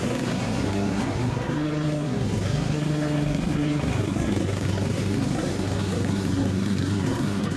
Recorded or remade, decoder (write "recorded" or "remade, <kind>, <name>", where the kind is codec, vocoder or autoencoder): remade, codec, SNAC